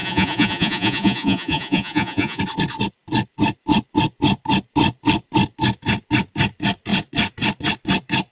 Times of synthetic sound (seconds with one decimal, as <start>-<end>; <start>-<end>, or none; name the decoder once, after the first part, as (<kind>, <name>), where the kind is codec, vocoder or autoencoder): 0.0-2.4 (vocoder, Vocos)